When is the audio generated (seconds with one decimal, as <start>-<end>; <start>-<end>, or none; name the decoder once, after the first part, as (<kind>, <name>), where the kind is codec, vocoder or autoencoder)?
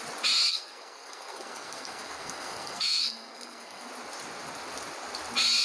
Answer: 0.5-3.9 (codec, SNAC)